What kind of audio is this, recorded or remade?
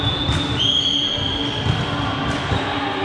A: recorded